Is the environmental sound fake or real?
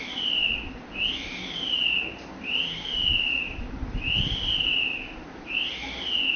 real